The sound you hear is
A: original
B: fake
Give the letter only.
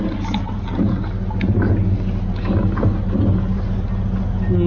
A